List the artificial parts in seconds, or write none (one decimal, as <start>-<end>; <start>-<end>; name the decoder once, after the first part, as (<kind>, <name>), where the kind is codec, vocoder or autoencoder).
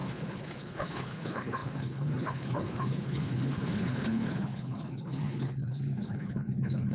0.0-6.9 (codec, HILCodec)